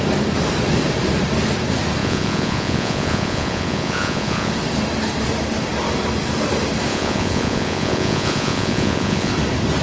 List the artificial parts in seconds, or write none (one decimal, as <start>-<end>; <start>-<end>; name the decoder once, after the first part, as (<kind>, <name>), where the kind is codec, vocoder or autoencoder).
2.0-4.5 (vocoder, Vocos); 6.9-9.3